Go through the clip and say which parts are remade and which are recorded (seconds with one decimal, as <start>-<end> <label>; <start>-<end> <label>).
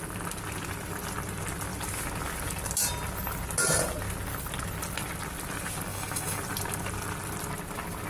0.0-5.9 recorded; 5.9-6.4 remade; 6.4-8.1 recorded